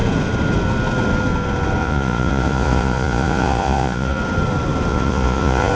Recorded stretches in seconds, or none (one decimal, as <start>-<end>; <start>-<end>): 0.0-1.8; 4.2-4.9